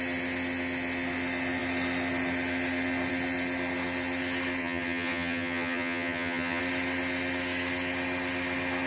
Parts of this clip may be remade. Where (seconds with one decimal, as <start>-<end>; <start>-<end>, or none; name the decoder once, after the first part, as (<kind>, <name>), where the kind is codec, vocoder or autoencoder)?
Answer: 4.6-6.6 (vocoder, HiFi-GAN)